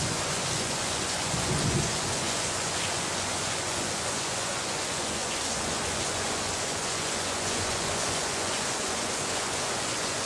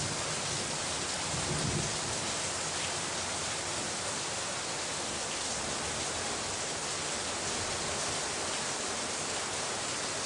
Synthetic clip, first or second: first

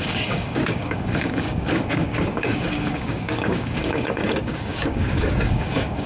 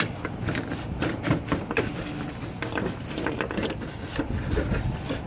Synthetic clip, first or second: first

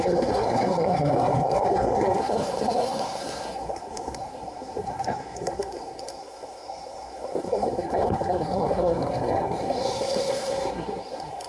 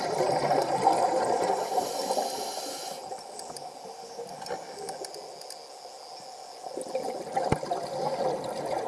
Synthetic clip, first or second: first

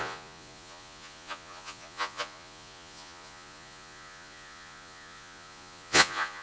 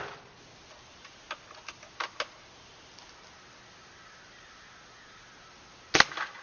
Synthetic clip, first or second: first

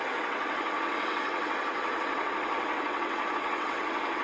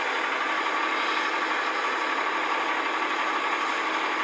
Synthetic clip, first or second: first